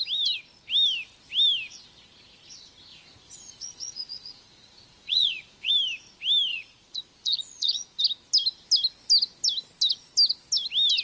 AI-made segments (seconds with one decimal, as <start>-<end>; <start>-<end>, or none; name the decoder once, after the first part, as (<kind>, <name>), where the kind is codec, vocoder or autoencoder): 2.9-5.7 (vocoder, Vocos); 6.5-8.0